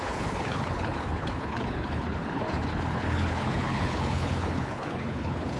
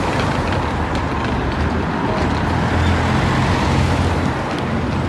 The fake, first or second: first